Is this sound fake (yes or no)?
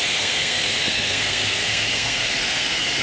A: yes